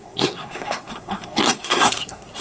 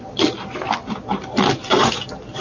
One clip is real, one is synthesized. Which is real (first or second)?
second